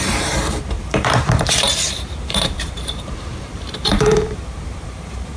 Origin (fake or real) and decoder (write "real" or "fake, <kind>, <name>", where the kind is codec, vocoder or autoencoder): fake, vocoder, BigVGAN v2